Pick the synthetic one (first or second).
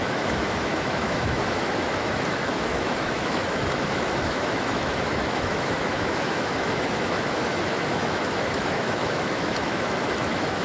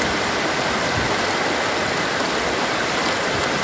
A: first